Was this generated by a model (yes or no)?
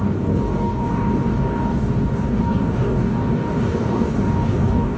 yes